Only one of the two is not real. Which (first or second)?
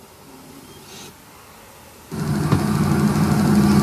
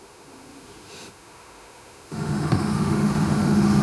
second